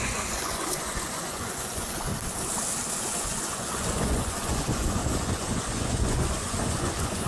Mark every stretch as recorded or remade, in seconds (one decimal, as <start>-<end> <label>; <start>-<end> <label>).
0.0-2.1 remade; 2.1-3.0 recorded; 3.0-7.3 remade